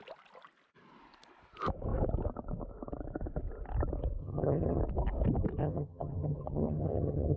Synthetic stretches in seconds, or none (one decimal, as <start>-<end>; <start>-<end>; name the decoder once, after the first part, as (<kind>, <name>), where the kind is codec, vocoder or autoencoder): 4.2-4.8 (vocoder, HiFi-GAN); 5.6-7.4